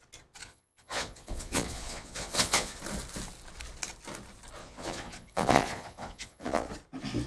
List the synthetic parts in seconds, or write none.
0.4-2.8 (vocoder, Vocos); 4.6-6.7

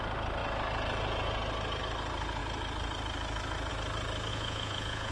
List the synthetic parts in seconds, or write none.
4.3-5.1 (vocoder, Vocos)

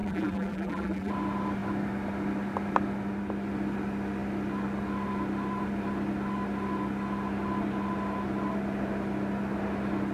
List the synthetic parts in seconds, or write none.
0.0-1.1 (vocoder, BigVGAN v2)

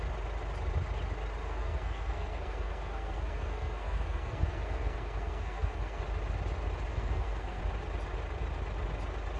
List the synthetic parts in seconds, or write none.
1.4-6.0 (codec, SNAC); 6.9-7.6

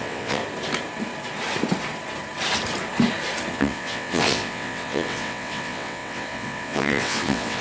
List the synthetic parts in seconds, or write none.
0.0-0.4 (vocoder, WaveNeXt); 3.5-7.6

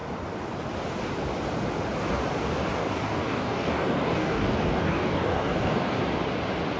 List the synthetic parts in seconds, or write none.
2.8-6.0 (codec, DAC)